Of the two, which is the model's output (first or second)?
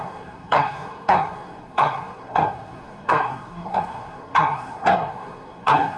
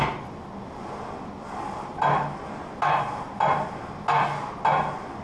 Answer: first